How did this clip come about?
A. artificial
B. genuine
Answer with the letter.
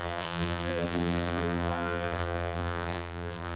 A